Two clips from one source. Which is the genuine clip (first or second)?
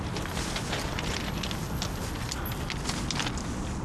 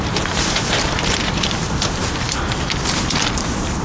first